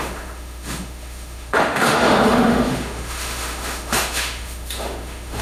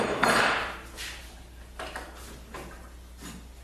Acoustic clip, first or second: second